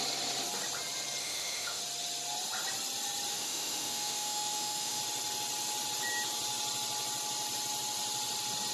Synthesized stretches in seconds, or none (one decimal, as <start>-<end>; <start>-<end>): 1.2-1.8; 3.3-5.0